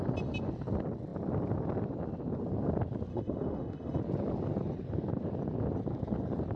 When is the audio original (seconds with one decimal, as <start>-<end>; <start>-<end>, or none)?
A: 0.0-3.1; 4.0-6.6